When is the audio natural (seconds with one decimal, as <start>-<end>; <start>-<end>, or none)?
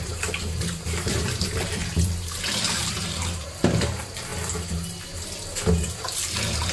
4.3-5.7